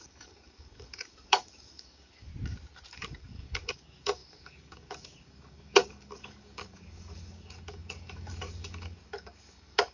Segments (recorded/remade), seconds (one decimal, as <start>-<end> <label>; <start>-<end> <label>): 0.0-2.3 remade; 2.3-2.9 recorded; 2.9-9.9 remade